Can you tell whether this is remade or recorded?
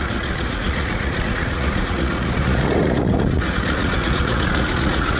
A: remade